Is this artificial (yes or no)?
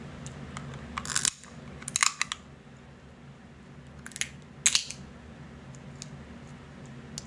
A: no